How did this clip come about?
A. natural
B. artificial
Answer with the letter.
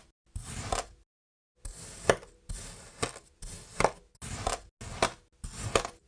A